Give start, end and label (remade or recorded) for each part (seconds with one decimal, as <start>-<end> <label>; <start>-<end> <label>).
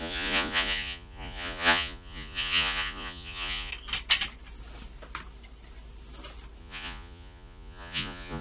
0.0-3.7 remade; 3.7-6.6 recorded; 6.6-8.4 remade